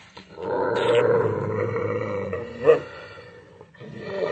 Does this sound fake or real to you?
fake